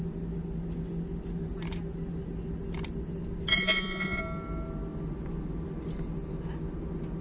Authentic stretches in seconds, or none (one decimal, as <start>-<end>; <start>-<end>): 0.0-3.5; 4.2-7.2